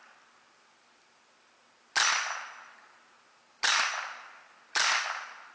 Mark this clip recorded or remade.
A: recorded